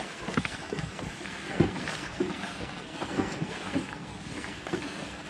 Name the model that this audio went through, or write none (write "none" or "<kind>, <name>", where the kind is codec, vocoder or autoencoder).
codec, SNAC